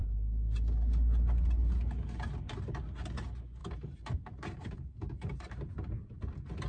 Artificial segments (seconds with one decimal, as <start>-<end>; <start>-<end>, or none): 3.6-5.7